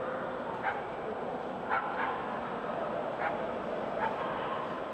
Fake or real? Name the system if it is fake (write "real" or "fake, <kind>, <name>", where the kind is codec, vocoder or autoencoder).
real